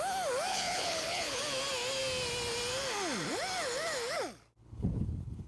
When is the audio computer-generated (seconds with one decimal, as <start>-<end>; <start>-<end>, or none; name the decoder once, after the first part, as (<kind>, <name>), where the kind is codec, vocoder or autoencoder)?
0.5-1.4 (codec, HILCodec); 4.6-5.5